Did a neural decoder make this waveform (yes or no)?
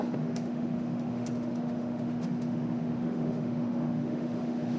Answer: yes